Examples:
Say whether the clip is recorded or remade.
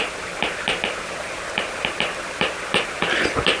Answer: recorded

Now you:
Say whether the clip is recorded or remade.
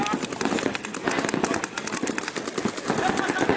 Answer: recorded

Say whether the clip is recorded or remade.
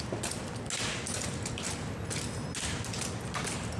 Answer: recorded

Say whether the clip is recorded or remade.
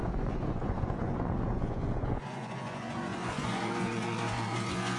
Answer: remade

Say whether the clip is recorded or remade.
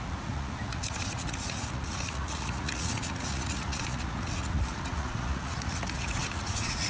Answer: remade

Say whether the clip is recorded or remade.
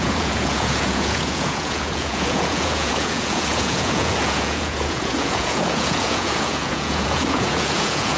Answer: remade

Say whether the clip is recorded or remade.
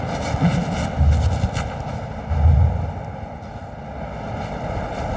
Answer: recorded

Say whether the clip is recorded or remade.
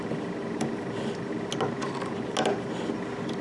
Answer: recorded